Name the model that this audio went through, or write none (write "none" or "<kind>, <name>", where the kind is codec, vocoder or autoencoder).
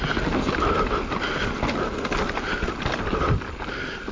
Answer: none